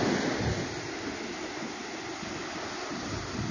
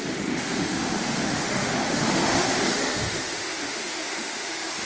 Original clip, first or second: first